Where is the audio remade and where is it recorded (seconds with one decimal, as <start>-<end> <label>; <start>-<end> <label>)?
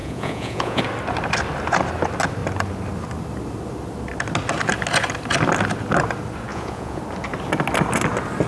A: 0.0-0.8 remade; 0.8-6.5 recorded; 6.5-7.0 remade; 7.0-8.5 recorded